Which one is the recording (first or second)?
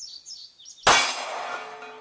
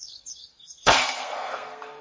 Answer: first